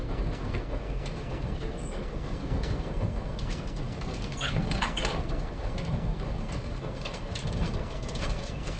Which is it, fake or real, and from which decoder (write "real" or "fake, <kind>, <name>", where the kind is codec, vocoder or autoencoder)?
fake, codec, SNAC